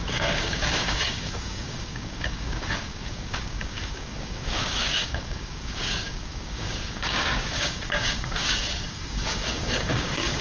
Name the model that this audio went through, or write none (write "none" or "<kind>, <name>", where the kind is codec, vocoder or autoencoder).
codec, DAC